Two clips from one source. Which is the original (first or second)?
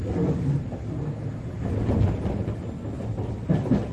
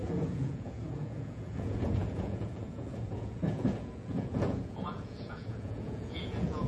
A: first